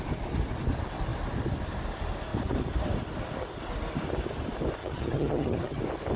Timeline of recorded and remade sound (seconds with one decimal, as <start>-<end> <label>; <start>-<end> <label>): 0.0-4.8 recorded; 4.8-5.8 remade; 5.8-6.2 recorded